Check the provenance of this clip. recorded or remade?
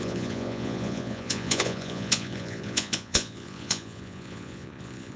remade